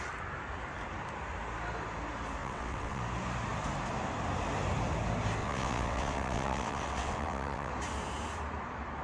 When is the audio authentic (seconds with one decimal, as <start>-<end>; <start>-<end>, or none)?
0.0-2.4; 3.0-5.4; 7.7-9.0